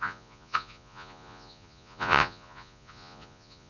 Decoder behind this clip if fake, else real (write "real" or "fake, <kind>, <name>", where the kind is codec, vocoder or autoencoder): fake, vocoder, Vocos